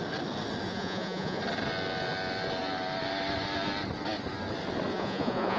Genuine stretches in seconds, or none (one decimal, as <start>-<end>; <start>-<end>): 0.0-0.7; 1.4-4.9